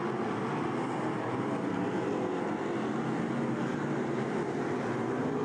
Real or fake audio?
real